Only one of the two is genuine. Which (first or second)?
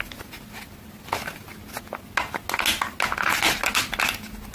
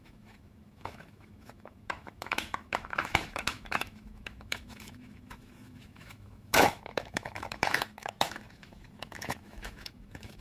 first